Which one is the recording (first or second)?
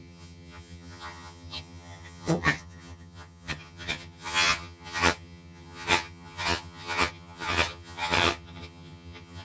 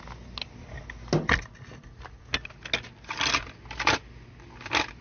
second